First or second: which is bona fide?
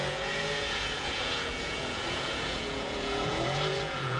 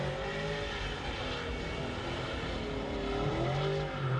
second